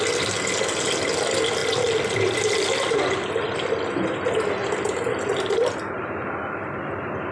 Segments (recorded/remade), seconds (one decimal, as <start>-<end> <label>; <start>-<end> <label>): 0.0-7.3 recorded

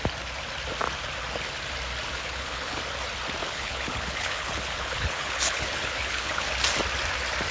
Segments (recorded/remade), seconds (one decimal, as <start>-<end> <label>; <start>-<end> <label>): 0.0-2.1 recorded; 2.1-2.8 remade; 2.8-3.4 recorded; 3.4-6.5 remade; 6.5-7.5 recorded

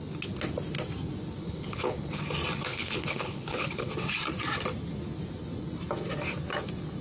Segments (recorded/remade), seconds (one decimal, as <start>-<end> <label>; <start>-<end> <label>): 0.0-1.4 recorded; 1.4-2.2 remade; 2.2-2.7 recorded; 2.7-3.9 remade; 3.9-7.0 recorded

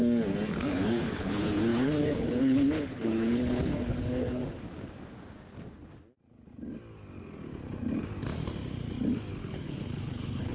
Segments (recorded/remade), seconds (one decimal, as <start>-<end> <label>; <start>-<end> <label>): 0.0-0.6 recorded; 0.6-4.4 remade; 4.4-9.3 recorded; 9.3-10.5 remade